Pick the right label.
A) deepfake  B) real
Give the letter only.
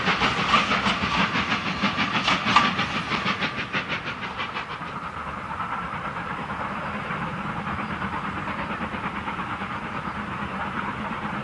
B